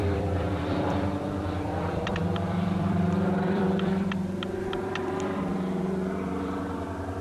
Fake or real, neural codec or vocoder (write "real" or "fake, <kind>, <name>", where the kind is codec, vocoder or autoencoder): fake, vocoder, BigVGAN v2